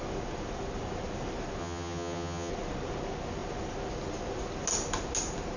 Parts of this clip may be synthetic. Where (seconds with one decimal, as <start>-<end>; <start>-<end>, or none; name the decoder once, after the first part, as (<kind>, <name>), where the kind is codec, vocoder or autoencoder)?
1.6-2.5 (vocoder, HiFi-GAN)